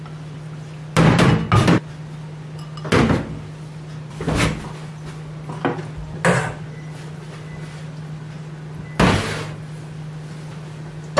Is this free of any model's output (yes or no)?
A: yes